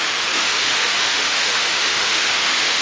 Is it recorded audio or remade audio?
remade